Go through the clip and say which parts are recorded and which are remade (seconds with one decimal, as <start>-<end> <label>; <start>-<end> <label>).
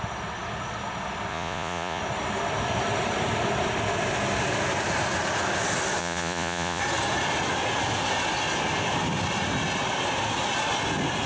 0.0-1.3 recorded; 1.3-2.0 remade; 2.0-6.0 recorded; 6.0-6.8 remade; 6.8-11.3 recorded